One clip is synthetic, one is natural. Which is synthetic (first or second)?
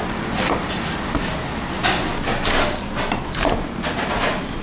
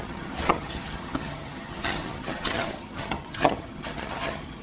second